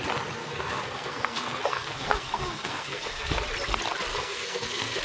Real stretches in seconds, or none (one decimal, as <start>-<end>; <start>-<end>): 0.0-0.4; 3.4-4.1